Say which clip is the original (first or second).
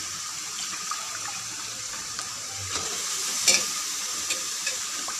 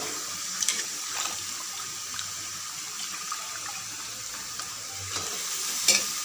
second